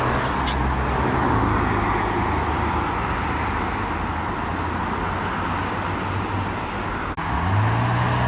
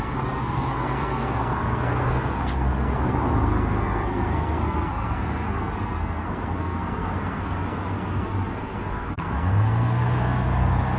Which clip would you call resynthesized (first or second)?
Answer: second